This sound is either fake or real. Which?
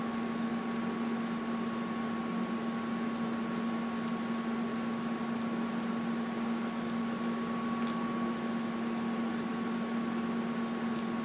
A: real